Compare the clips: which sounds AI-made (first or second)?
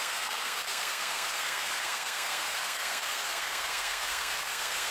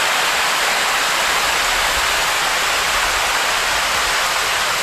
first